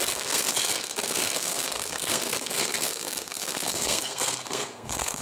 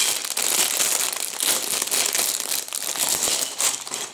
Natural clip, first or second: second